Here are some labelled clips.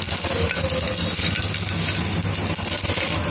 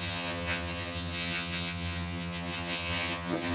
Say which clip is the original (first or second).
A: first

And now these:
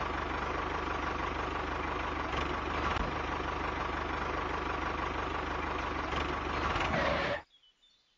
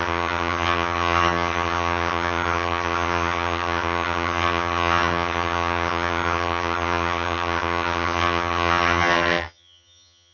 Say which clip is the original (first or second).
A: first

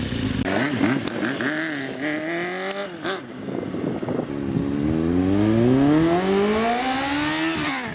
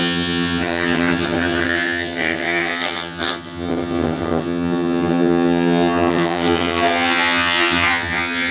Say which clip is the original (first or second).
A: first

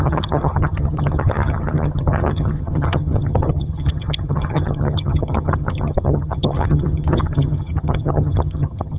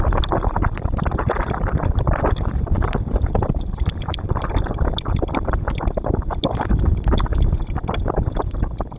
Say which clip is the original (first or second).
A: second